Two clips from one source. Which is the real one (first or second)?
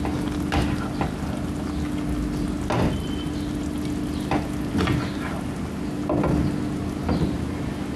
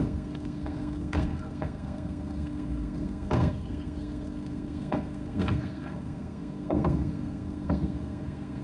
first